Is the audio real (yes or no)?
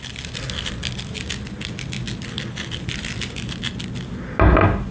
yes